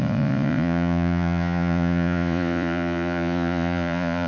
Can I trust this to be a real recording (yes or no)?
no